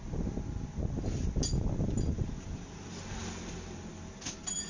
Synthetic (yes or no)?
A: no